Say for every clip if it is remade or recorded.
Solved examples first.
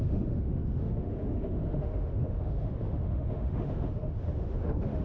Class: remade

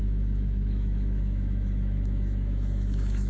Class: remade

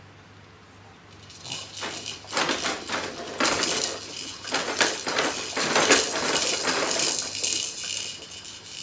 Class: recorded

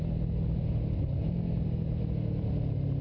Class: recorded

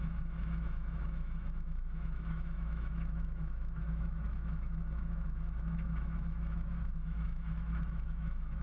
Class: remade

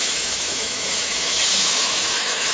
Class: remade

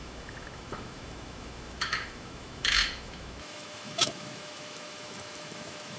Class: remade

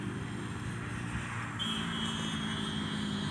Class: recorded